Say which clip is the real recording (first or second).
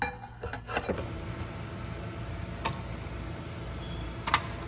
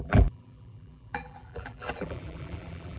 first